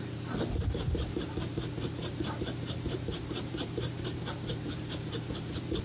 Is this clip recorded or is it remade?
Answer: remade